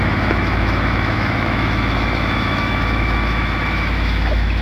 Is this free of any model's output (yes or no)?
no